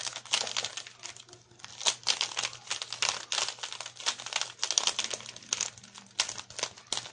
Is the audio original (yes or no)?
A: yes